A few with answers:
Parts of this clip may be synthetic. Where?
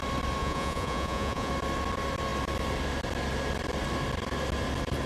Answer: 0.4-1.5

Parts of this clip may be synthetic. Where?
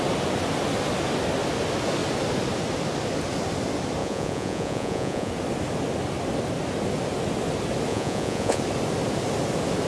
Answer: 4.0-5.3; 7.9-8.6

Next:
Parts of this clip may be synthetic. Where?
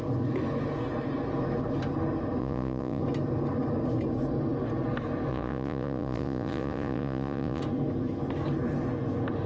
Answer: 2.4-3.0; 5.3-7.6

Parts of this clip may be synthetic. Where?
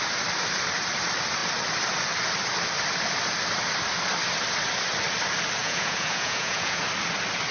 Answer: 5.6-6.8